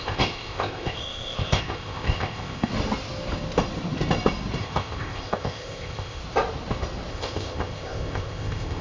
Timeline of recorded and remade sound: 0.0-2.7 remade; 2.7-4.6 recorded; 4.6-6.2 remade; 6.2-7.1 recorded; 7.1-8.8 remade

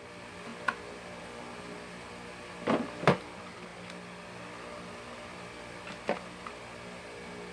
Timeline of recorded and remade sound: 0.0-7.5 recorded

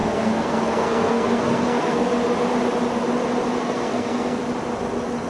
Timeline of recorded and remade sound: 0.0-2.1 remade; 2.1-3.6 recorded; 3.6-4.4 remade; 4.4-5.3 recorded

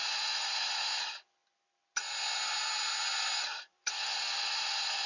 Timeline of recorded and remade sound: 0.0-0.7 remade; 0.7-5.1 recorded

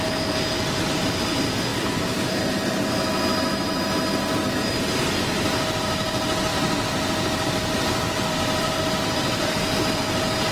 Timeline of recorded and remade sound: 0.0-1.7 recorded; 1.7-2.3 remade; 2.3-6.5 recorded; 6.5-9.6 remade; 9.6-10.5 recorded

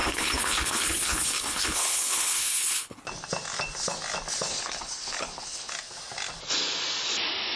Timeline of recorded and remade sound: 0.0-3.0 remade; 3.0-4.5 recorded; 4.5-5.7 remade; 5.7-7.6 recorded

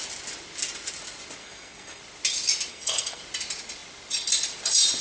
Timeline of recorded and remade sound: 0.0-1.4 recorded; 1.4-2.0 remade; 2.0-2.7 recorded; 2.7-3.2 remade; 3.2-5.0 recorded

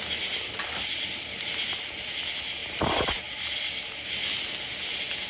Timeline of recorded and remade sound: 0.0-5.3 recorded